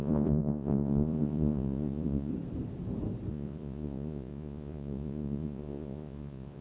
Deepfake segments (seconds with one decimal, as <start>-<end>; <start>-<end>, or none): 0.0-2.3; 3.3-6.6